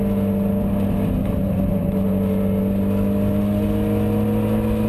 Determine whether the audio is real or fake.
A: real